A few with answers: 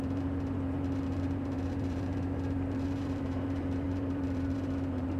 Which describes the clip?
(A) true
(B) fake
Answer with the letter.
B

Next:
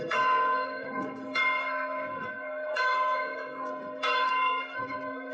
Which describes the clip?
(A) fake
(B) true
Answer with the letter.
A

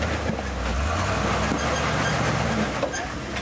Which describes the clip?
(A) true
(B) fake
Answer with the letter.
A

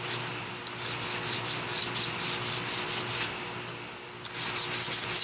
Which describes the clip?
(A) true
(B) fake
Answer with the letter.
A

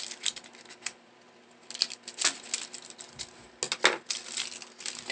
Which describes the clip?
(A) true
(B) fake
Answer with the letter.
A